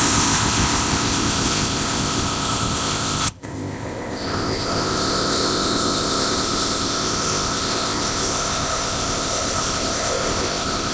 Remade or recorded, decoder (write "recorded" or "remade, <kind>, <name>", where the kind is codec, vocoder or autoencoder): remade, codec, ZipCodec